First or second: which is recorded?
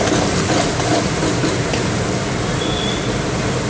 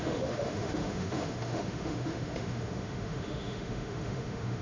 first